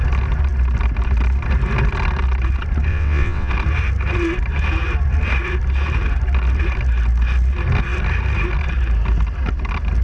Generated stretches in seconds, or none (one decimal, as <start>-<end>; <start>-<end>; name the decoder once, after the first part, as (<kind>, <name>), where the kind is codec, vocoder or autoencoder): 2.9-3.5 (vocoder, WaveNeXt)